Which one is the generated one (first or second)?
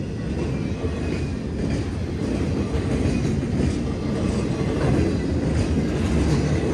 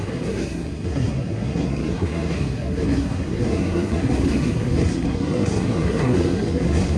second